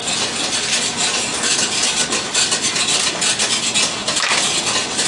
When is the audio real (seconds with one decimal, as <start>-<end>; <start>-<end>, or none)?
0.0-5.1